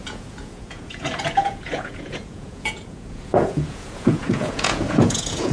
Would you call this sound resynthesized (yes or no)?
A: yes